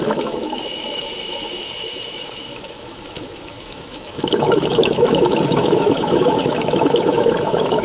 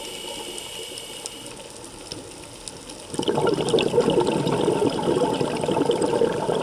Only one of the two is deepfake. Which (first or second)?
first